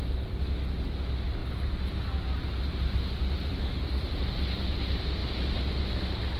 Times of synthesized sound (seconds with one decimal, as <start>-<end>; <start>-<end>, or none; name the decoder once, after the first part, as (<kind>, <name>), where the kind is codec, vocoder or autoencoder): 3.6-4.1 (autoencoder, DAC-VAE)